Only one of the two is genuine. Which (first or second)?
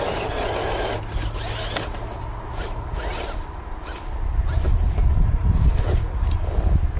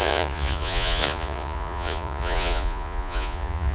first